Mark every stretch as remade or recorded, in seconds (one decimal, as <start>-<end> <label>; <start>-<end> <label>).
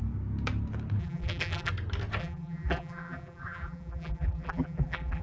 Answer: 0.0-1.0 recorded; 1.0-1.7 remade; 1.7-2.2 recorded; 2.2-5.2 remade